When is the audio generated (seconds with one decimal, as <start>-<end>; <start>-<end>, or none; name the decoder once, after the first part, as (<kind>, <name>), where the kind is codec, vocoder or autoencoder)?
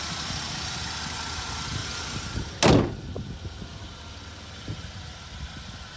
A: none